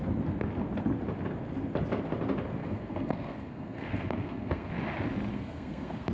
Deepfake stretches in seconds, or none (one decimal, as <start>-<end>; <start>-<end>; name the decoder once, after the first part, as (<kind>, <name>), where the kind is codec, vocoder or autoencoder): 2.6-4.7 (codec, SNAC); 5.3-6.1